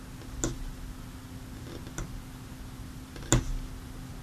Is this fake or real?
real